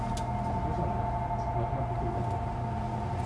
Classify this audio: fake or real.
real